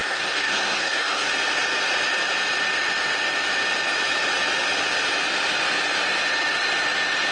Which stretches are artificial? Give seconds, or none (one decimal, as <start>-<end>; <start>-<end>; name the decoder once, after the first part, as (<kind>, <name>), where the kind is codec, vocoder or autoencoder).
0.0-1.3 (codec, SNAC)